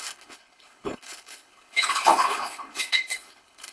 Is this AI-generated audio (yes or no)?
yes